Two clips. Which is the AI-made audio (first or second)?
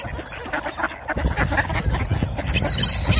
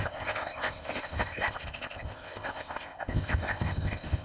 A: second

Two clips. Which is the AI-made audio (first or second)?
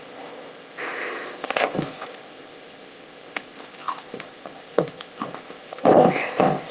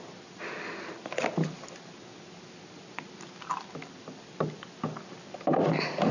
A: first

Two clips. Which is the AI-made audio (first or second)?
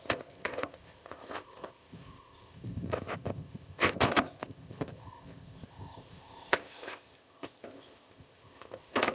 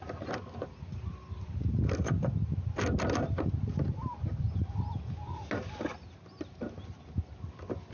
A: first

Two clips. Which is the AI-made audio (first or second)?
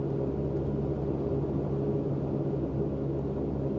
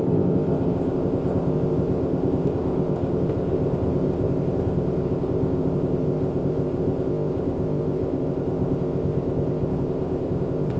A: second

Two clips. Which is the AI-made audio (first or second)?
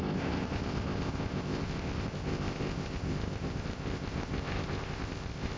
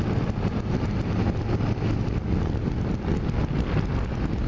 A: first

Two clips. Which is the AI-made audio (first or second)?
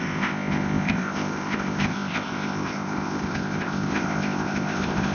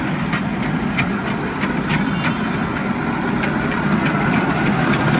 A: first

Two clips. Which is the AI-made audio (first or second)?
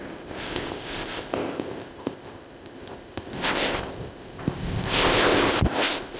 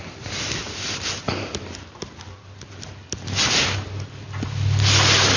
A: first